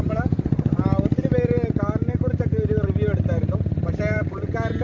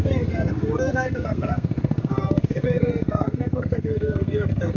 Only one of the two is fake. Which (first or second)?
second